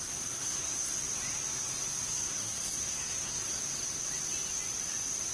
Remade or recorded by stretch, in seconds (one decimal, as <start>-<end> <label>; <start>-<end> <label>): 0.0-0.4 recorded; 0.4-0.9 remade; 0.9-2.1 recorded; 2.1-3.4 remade; 3.4-5.3 recorded